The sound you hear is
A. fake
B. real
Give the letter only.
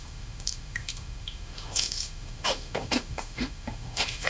A